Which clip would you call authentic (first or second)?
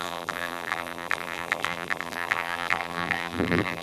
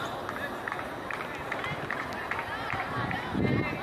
second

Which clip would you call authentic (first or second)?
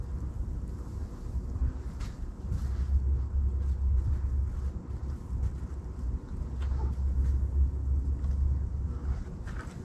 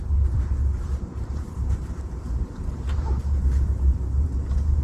first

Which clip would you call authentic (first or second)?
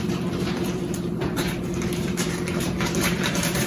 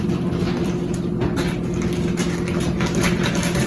second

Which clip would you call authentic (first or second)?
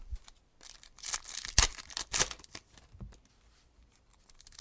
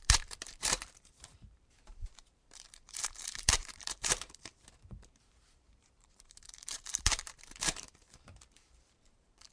first